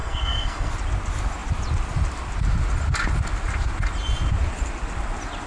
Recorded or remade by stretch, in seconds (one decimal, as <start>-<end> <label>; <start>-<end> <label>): 0.0-0.7 remade; 0.7-5.5 recorded